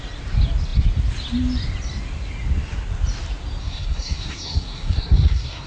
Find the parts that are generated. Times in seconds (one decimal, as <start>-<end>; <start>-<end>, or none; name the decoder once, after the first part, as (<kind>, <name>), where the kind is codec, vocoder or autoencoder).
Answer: 3.6-5.7 (codec, SNAC)